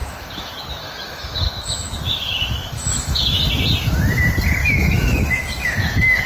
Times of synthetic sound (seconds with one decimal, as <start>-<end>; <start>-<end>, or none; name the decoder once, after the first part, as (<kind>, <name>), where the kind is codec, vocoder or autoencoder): 0.0-3.4 (autoencoder, DAC-VAE); 4.6-6.3